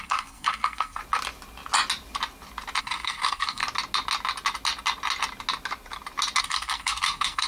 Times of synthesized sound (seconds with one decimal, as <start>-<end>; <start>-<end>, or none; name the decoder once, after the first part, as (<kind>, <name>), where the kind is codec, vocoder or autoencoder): 0.0-1.0 (codec, SNAC); 2.8-3.6; 6.4-7.5